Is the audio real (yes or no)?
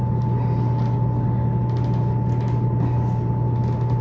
yes